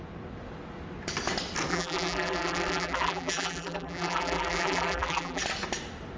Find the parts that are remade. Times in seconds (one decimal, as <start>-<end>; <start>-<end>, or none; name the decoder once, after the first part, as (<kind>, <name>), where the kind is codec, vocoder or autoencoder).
1.7-5.4 (vocoder, BigVGAN v2)